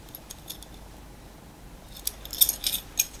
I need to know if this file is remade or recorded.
recorded